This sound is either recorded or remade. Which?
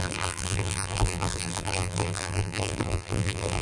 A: remade